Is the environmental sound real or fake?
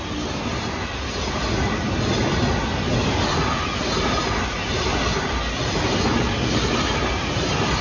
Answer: real